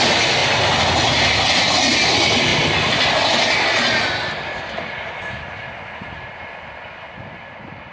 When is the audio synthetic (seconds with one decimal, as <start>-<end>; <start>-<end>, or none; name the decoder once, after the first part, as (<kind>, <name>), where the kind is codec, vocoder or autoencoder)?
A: none